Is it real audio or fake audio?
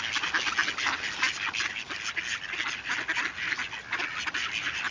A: real